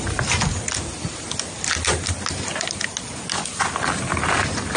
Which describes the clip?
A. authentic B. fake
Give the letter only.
A